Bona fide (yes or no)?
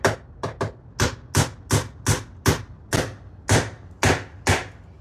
yes